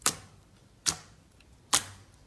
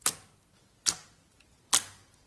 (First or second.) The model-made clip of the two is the first